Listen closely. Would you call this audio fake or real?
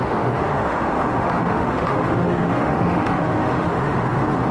fake